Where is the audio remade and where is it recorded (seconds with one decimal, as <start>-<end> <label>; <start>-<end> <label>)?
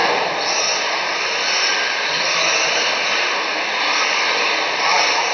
0.0-5.3 recorded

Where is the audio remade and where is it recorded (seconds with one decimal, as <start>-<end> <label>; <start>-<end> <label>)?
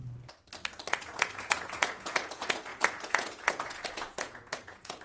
0.0-0.9 recorded; 0.9-5.0 remade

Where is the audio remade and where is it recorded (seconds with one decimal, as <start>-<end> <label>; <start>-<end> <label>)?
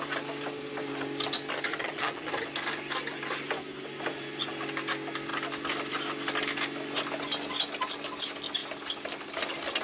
0.0-1.7 recorded; 1.7-2.3 remade; 2.3-9.8 recorded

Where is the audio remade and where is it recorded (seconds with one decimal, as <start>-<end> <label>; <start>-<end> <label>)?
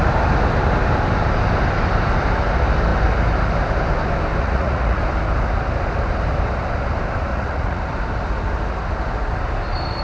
0.0-4.4 recorded; 4.4-5.0 remade; 5.0-7.3 recorded; 7.3-7.8 remade; 7.8-10.0 recorded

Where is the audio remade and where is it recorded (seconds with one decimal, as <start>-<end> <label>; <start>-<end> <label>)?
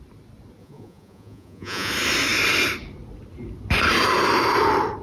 0.0-0.6 recorded; 0.6-1.9 remade; 1.9-5.0 recorded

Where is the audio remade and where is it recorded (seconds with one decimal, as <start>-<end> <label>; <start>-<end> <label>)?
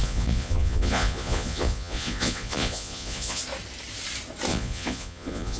0.0-3.4 remade; 3.4-4.5 recorded; 4.5-5.6 remade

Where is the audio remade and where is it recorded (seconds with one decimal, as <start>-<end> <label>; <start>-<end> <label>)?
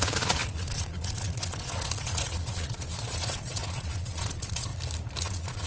0.0-4.7 remade; 4.7-5.2 recorded; 5.2-5.7 remade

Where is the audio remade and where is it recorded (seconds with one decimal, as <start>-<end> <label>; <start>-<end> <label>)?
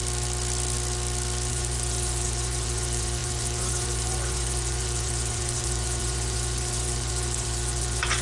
0.0-1.5 recorded; 1.5-8.2 remade